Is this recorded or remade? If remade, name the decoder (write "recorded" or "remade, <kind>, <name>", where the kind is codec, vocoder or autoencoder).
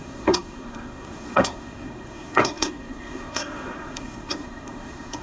remade, codec, SNAC